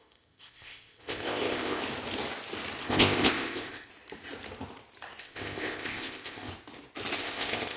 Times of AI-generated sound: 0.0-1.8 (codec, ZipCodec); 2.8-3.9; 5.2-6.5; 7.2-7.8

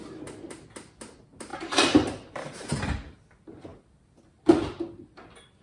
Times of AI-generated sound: 1.5-2.7 (vocoder, BigVGAN v2)